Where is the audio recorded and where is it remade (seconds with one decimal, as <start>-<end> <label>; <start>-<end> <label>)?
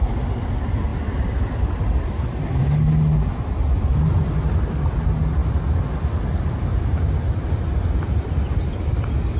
0.0-9.4 recorded